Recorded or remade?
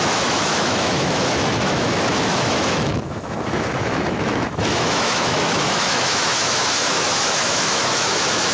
remade